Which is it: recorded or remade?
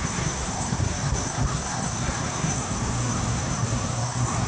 remade